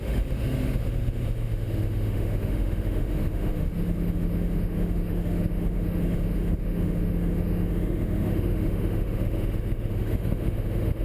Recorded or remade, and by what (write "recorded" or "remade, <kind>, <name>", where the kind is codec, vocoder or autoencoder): remade, autoencoder, DAC-VAE